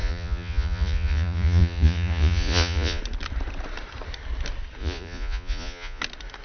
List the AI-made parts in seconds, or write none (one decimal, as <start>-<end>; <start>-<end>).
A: 0.0-3.0; 4.8-6.0